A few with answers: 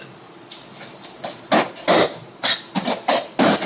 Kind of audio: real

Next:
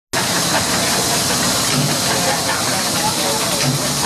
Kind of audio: real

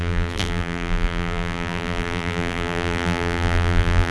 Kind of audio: fake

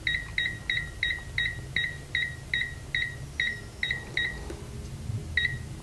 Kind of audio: real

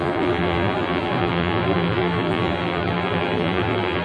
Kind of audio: fake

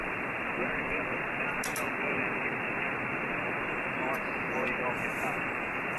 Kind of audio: fake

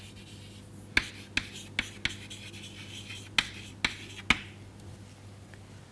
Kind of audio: real